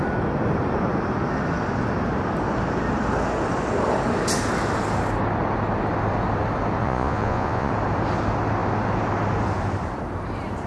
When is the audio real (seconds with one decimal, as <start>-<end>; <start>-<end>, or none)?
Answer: 0.0-6.8; 7.7-10.7